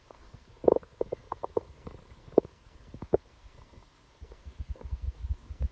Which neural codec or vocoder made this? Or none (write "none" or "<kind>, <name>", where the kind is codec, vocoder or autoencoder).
codec, SNAC